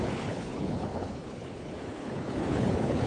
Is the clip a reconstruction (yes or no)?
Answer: yes